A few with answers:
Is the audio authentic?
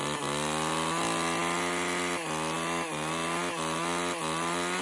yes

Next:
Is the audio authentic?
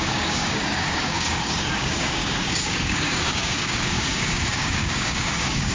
no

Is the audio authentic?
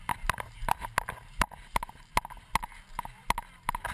yes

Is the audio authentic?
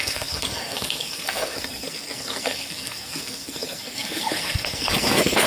no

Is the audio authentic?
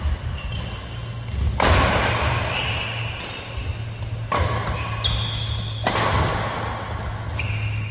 yes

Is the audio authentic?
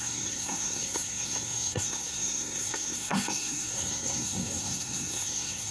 no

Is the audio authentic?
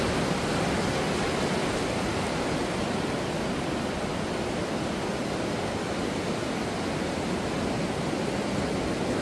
yes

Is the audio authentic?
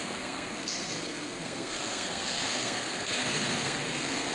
no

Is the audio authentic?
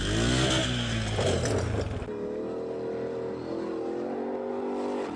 yes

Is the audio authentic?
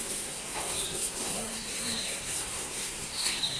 no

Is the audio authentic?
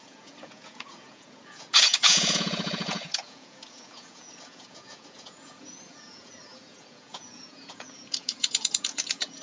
no